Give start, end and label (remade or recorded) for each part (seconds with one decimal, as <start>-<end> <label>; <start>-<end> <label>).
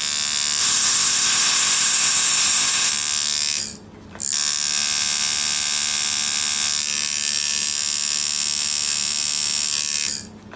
0.0-0.6 recorded; 0.6-2.9 remade; 2.9-10.6 recorded